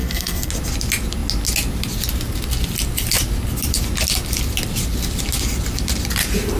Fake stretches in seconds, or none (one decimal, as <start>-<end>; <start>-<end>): 0.0-0.5